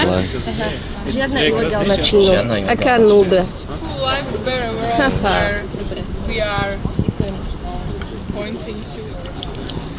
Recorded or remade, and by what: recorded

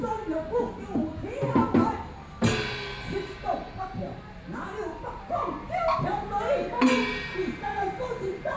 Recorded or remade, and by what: recorded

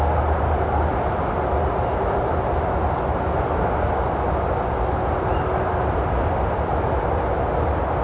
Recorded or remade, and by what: recorded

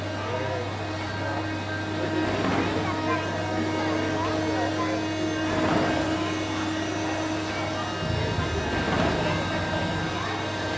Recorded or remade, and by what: recorded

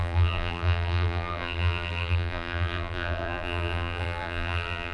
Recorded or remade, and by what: remade, vocoder, BigVGAN v2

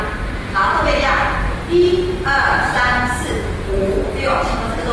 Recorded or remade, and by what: recorded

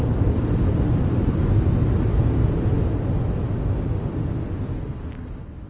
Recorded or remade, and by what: recorded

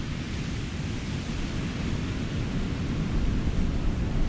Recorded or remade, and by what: recorded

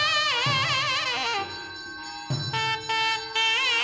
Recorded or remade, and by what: recorded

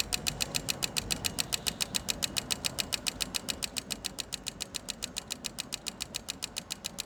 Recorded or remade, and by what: recorded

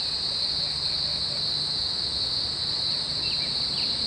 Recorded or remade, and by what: recorded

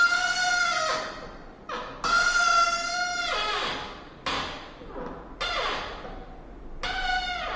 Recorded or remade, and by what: recorded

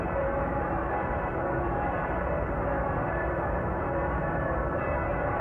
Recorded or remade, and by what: remade, vocoder, BigVGAN v2